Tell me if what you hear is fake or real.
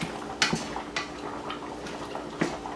real